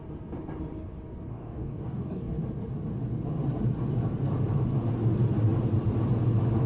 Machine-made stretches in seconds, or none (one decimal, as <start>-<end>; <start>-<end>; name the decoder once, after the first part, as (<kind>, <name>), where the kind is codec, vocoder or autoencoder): 1.3-2.4 (codec, DAC)